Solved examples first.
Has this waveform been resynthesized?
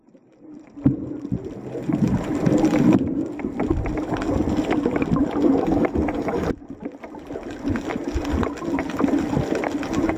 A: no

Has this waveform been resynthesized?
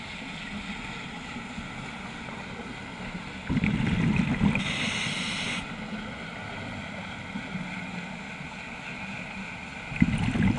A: no